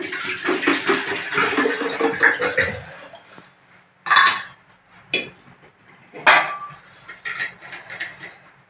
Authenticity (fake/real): real